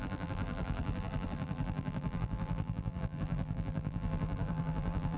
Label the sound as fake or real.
fake